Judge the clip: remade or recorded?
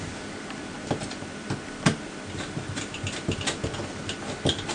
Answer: recorded